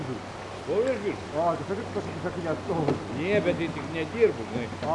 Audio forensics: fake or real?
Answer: real